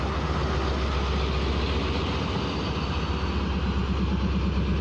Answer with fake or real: real